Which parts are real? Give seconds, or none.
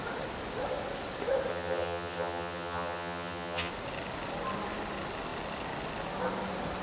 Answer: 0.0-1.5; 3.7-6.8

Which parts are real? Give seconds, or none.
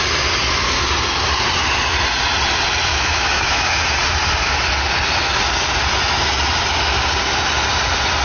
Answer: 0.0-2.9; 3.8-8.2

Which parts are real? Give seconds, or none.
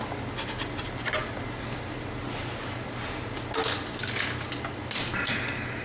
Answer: 0.0-5.8